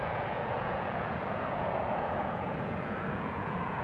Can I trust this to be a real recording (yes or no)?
no